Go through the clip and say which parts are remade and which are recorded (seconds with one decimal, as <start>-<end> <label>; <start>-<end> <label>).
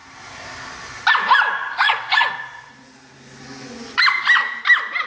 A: 0.0-1.6 recorded; 1.6-2.7 remade; 2.7-5.1 recorded